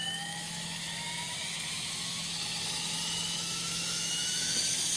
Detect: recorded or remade remade